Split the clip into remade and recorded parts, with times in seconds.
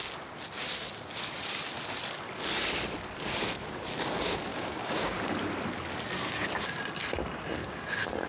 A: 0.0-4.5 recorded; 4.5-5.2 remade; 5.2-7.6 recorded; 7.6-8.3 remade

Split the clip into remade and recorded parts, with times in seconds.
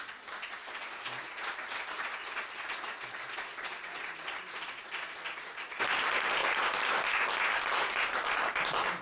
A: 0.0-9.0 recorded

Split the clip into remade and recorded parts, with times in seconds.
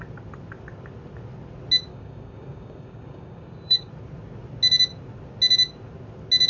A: 0.0-1.9 recorded; 1.9-3.9 remade; 3.9-6.5 recorded